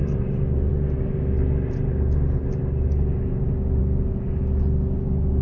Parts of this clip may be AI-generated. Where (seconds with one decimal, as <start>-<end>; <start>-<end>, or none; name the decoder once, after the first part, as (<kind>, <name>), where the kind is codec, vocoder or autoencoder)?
none